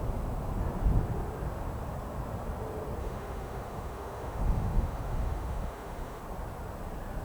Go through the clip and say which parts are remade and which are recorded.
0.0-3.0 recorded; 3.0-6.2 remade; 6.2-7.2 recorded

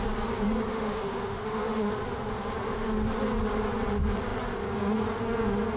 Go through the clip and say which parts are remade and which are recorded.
0.0-0.7 recorded; 0.7-1.9 remade; 1.9-5.8 recorded

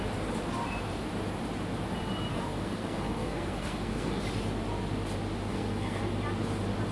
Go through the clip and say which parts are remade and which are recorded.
0.0-2.3 recorded; 2.3-4.2 remade; 4.2-5.5 recorded; 5.5-6.0 remade; 6.0-6.9 recorded

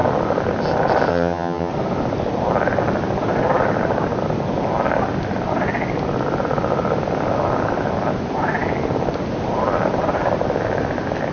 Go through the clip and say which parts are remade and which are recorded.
0.0-1.1 recorded; 1.1-1.7 remade; 1.7-11.3 recorded

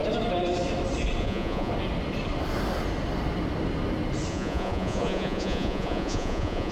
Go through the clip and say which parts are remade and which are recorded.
0.0-1.2 recorded; 1.2-1.7 remade; 1.7-4.3 recorded; 4.3-6.7 remade

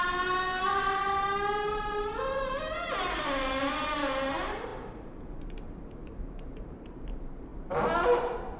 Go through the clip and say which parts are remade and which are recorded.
0.0-8.6 remade

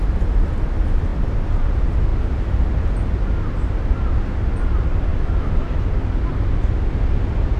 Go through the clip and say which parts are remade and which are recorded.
0.0-7.6 recorded

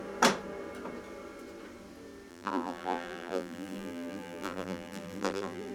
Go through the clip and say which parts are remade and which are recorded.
0.0-2.3 recorded; 2.3-5.7 remade